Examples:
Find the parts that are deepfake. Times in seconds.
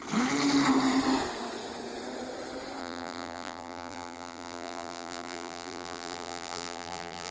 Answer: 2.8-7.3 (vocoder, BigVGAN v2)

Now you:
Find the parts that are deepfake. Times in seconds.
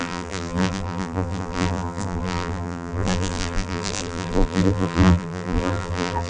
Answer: 0.0-6.3 (vocoder, BigVGAN v2)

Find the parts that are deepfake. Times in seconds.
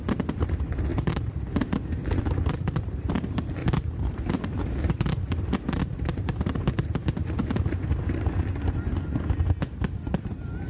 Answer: 0.9-1.8 (vocoder, BigVGAN v2); 3.6-8.2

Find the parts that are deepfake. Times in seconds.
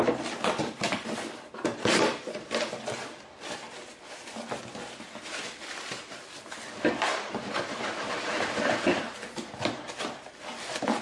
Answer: 0.0-11.0 (vocoder, BigVGAN v2)